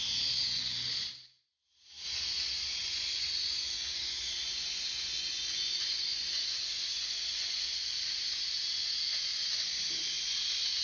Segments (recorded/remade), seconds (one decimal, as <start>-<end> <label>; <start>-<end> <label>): 0.0-2.8 recorded; 2.8-7.9 remade; 7.9-9.3 recorded; 9.3-9.9 remade; 9.9-10.8 recorded